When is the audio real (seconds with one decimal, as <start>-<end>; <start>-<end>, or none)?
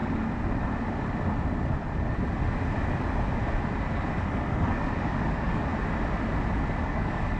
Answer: 0.0-4.3; 5.7-6.8